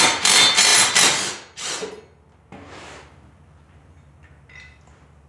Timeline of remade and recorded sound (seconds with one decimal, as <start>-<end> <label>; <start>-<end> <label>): 0.0-5.3 recorded